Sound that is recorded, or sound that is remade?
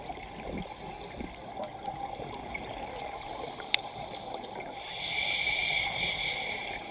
recorded